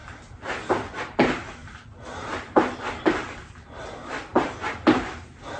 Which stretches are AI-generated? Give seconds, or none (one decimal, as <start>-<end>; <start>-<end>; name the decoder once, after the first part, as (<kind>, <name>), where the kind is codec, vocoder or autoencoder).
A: none